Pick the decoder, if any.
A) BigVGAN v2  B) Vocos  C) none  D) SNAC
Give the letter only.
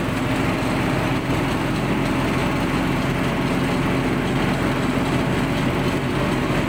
C